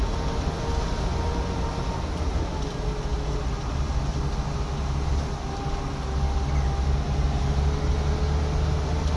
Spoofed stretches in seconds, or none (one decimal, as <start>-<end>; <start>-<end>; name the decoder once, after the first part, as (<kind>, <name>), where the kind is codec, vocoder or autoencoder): none